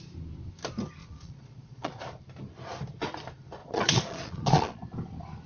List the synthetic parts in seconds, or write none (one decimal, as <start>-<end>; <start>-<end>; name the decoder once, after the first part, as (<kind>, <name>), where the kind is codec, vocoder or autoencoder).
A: 1.0-2.0 (vocoder, Vocos); 3.6-4.8